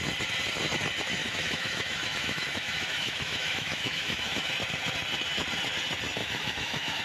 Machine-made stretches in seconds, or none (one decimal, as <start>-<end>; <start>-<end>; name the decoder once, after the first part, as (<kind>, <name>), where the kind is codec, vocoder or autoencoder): 1.2-4.5 (autoencoder, DAC-VAE); 6.2-7.0